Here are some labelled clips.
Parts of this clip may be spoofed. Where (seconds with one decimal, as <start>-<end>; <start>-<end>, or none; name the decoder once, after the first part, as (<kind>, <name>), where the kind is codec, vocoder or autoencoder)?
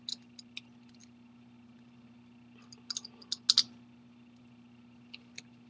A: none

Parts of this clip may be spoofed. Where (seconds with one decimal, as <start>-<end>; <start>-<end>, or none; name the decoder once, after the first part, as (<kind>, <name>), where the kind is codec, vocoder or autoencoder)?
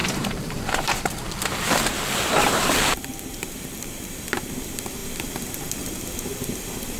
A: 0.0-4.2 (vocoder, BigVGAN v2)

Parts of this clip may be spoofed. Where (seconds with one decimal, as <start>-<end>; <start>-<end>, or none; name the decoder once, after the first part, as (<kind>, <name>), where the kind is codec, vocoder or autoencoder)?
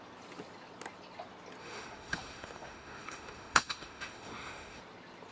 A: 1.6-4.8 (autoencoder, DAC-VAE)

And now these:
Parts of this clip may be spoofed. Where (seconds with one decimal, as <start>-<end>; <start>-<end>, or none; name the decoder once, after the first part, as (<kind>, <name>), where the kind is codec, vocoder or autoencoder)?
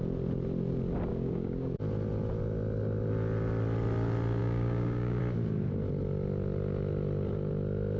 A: 1.1-1.8 (codec, DAC); 4.4-5.2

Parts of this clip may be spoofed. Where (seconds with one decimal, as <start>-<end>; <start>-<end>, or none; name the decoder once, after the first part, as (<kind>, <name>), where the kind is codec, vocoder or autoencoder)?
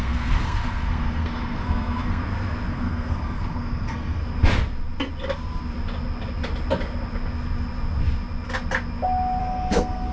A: 0.0-2.2 (codec, SNAC); 2.7-4.2; 9.4-10.1